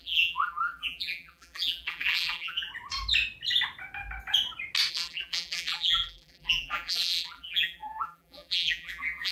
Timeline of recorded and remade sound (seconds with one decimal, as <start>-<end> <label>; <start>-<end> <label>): 0.0-2.7 remade; 2.7-4.9 recorded; 4.9-9.3 remade